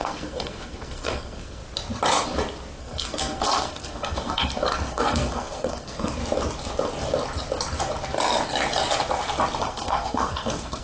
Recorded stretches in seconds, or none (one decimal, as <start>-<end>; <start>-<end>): 1.6-2.8; 6.2-9.6